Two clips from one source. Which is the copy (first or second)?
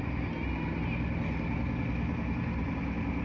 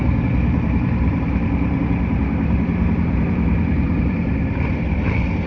second